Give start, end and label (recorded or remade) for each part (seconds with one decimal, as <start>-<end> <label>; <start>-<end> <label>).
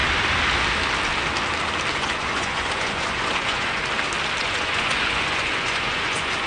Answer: 0.0-1.9 recorded; 1.9-3.8 remade; 3.8-4.4 recorded; 4.4-6.5 remade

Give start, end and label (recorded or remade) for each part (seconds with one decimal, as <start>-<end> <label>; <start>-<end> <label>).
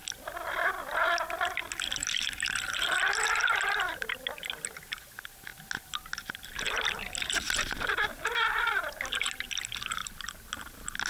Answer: 0.0-11.1 recorded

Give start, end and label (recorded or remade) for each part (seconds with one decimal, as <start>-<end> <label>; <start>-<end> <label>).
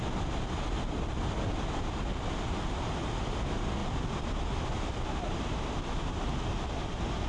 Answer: 0.0-7.3 recorded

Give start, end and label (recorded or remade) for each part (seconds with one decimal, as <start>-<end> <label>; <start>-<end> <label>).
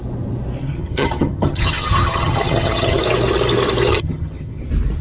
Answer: 0.0-0.6 recorded; 0.6-3.0 remade; 3.0-3.9 recorded; 3.9-4.6 remade; 4.6-5.0 recorded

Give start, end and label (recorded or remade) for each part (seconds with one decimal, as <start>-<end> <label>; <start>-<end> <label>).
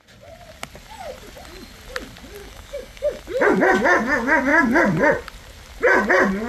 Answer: 0.0-2.4 recorded; 2.4-3.2 remade; 3.2-6.5 recorded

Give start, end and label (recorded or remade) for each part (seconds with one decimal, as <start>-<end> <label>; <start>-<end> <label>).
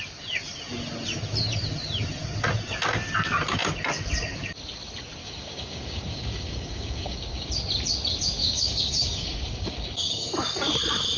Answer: 0.0-5.2 recorded; 5.2-7.5 remade; 7.5-8.4 recorded; 8.4-10.3 remade; 10.3-11.2 recorded